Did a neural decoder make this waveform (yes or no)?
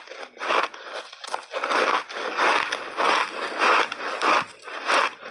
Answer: no